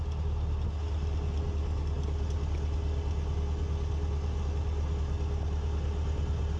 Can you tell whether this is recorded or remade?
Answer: recorded